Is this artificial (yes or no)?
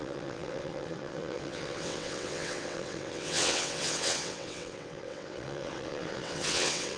yes